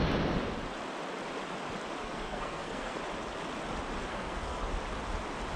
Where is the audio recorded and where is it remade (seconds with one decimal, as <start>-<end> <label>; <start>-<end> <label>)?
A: 0.0-2.0 recorded; 2.0-3.0 remade; 3.0-4.1 recorded; 4.1-4.7 remade; 4.7-5.6 recorded